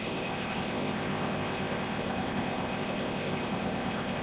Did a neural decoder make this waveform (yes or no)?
yes